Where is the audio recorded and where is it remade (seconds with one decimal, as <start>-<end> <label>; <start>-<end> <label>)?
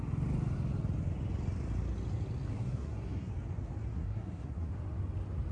0.0-2.5 recorded; 2.5-3.3 remade; 3.3-3.9 recorded; 3.9-4.7 remade; 4.7-5.5 recorded